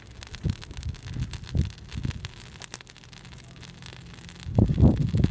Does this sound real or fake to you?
real